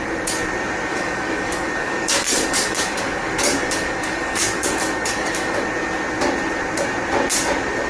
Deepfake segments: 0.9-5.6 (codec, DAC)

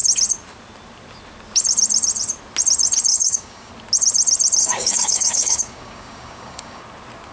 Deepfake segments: 3.1-3.7 (codec, DAC); 4.6-6.8

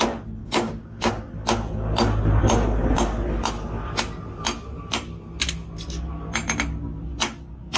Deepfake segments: 0.4-1.1 (codec, DAC)